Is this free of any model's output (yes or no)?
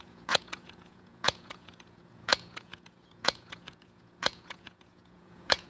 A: no